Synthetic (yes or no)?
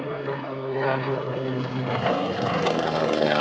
yes